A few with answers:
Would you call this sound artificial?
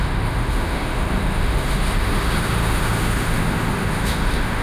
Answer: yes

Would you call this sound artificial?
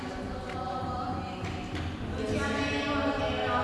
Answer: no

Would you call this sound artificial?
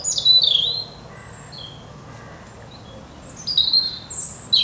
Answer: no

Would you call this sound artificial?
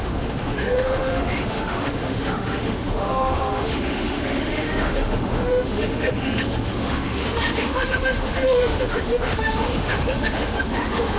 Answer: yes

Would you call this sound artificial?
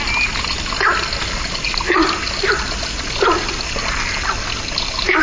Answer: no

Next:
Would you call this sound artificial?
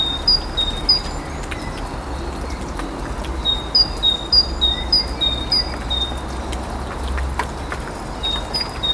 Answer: no